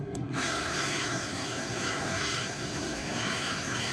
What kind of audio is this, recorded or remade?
remade